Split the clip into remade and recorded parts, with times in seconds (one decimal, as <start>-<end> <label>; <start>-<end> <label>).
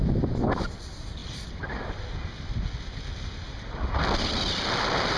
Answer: 0.0-5.2 recorded